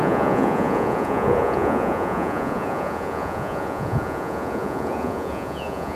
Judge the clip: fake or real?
fake